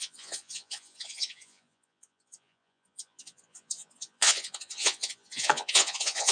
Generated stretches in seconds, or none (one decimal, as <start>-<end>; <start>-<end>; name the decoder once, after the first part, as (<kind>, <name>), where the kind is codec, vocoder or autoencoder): 0.0-6.3 (vocoder, Vocos)